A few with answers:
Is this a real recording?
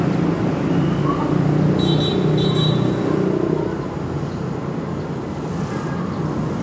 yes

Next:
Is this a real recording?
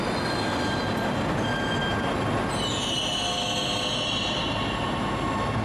yes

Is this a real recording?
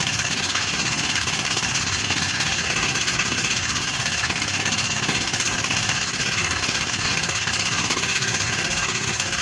no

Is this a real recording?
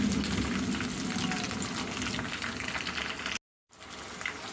yes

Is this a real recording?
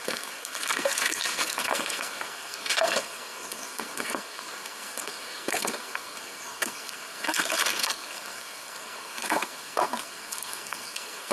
no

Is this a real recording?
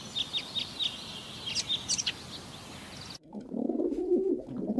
yes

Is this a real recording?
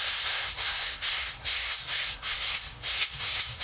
no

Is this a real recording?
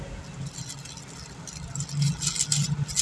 yes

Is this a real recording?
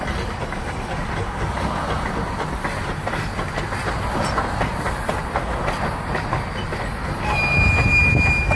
yes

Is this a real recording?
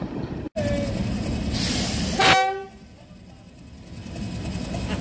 yes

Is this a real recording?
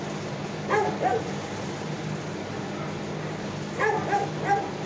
yes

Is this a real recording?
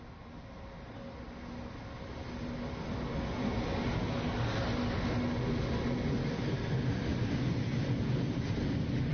yes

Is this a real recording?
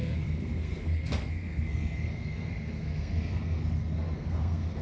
no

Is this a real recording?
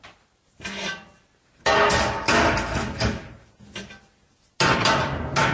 yes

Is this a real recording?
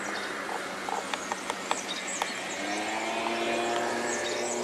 yes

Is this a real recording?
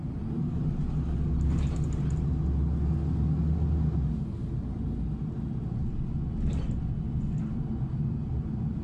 yes